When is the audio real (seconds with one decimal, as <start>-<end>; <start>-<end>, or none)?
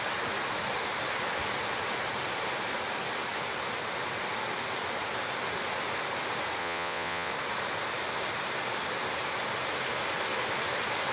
0.0-6.6; 7.3-11.1